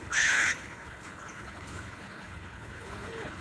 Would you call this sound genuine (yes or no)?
no